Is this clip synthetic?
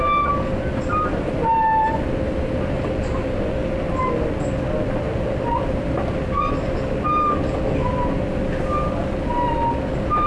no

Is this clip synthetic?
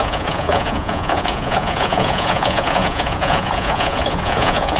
yes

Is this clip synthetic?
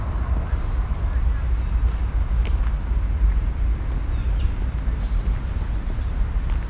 no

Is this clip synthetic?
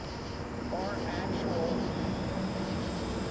no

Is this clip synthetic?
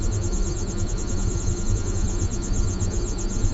yes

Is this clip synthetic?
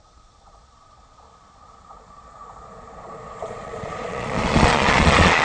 yes